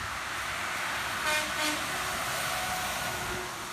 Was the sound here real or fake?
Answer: real